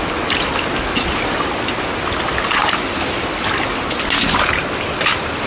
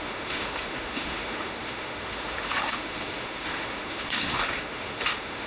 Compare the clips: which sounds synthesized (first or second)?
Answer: second